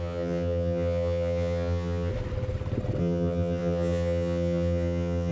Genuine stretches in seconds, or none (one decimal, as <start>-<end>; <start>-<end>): 2.1-3.0